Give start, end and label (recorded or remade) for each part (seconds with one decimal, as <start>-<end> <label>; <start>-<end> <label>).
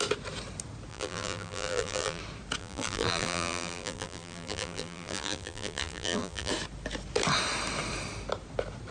0.0-0.9 recorded; 0.9-2.2 remade; 2.2-2.6 recorded; 2.6-6.5 remade; 6.5-8.9 recorded